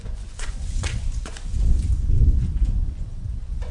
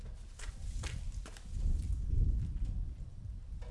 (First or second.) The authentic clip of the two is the second